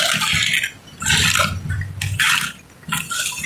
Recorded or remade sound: recorded